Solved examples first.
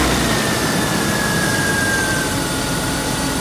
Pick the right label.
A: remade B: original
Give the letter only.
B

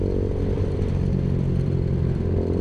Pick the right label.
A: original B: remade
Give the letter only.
A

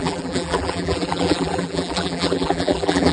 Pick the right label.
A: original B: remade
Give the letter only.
B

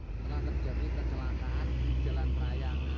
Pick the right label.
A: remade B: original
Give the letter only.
B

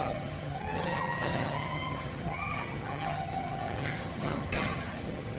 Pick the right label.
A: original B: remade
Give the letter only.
B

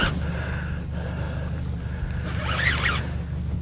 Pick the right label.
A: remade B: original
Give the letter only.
B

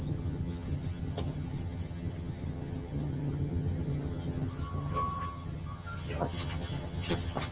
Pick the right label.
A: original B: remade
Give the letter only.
B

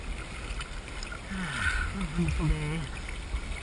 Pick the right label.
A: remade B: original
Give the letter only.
B